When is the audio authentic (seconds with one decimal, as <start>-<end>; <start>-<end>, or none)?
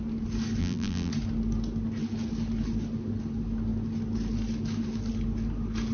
0.0-0.6; 1.1-5.9